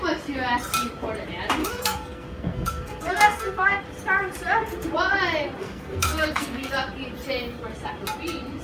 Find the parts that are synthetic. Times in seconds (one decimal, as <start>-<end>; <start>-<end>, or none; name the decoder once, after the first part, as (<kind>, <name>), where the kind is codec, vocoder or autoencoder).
1.6-3.8 (codec, SNAC); 5.6-6.7